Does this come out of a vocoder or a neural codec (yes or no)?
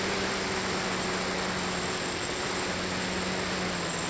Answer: no